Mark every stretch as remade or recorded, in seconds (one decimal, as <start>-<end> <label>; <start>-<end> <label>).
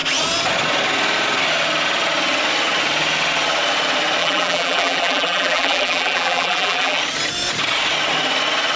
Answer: 0.0-4.2 recorded; 4.2-7.0 remade; 7.0-8.8 recorded